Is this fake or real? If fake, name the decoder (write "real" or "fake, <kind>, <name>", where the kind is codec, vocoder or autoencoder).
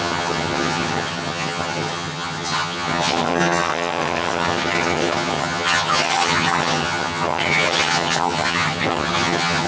fake, vocoder, HiFi-GAN